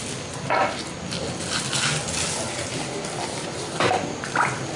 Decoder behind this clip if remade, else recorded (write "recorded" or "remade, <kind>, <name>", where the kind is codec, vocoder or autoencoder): recorded